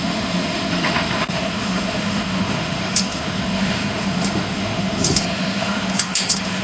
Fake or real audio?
fake